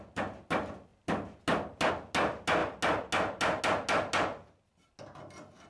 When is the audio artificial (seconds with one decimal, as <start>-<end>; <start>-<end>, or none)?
none

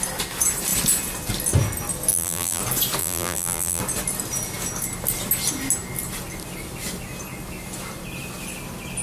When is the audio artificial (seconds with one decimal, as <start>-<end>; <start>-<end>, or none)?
2.1-2.6; 3.0-3.8

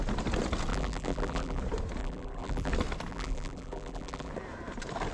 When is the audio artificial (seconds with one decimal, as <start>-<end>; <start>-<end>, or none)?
0.7-1.6; 2.0-2.7; 3.1-4.3

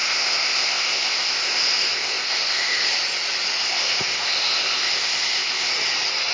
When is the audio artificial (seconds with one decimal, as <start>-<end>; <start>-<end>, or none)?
0.0-2.9; 3.6-5.7

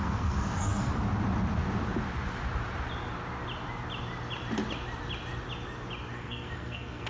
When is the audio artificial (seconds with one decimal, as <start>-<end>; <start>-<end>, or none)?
0.0-0.9; 6.1-7.1

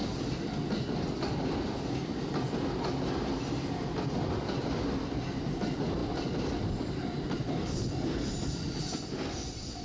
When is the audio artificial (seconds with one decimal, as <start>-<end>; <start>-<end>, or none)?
none